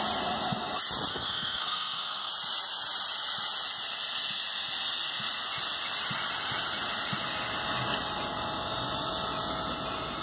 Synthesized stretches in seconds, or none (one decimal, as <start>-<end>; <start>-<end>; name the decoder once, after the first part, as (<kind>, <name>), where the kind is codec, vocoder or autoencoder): 1.1-2.3 (codec, SNAC)